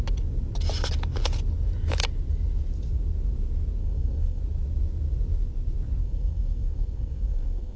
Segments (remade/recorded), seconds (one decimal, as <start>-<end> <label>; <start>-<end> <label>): 0.0-3.8 recorded; 3.8-4.4 remade; 4.4-6.0 recorded; 6.0-7.8 remade